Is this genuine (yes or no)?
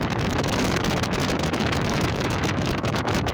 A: no